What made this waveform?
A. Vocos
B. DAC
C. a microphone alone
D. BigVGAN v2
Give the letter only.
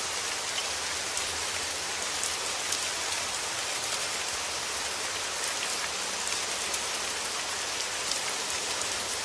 C